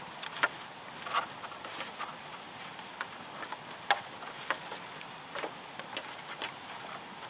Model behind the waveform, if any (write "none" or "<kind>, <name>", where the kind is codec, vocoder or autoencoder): none